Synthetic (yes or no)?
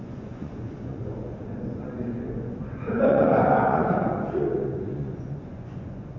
yes